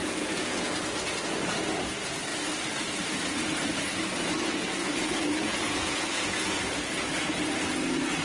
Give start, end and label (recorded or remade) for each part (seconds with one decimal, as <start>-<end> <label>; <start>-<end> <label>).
0.0-0.7 remade; 0.7-5.4 recorded; 5.4-7.1 remade; 7.1-8.2 recorded